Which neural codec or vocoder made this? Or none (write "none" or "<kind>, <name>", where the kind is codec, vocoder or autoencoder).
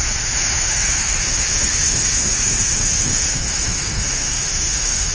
autoencoder, DAC-VAE